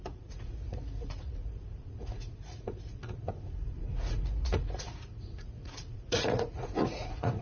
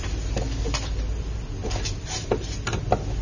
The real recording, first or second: second